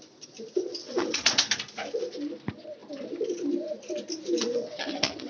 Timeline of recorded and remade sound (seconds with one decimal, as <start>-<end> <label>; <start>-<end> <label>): 0.0-0.8 recorded; 0.8-1.4 remade; 1.4-4.4 recorded; 4.4-5.3 remade